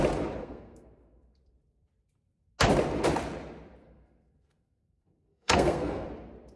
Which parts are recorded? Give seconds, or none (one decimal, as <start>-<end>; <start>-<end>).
0.0-0.4; 1.4-3.8; 6.1-6.6